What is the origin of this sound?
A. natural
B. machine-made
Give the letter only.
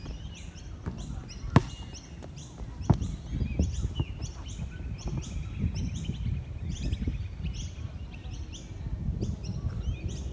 A